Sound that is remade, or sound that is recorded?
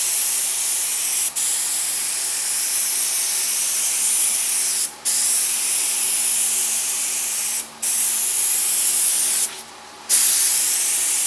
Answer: recorded